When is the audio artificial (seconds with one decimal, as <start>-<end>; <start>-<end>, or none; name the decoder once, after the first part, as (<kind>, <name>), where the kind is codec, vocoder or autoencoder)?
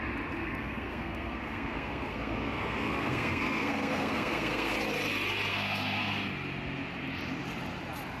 0.4-4.7 (codec, SNAC); 5.5-6.1